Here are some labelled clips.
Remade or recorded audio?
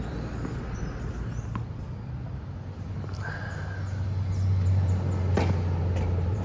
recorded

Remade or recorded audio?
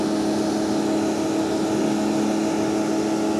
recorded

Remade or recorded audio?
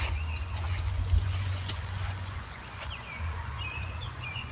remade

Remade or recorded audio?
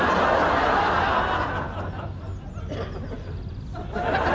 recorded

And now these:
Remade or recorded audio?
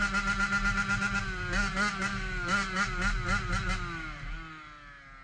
recorded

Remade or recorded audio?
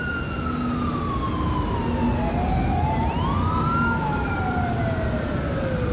recorded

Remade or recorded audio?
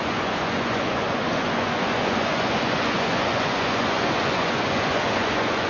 remade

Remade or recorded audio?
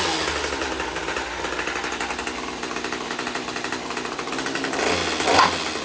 recorded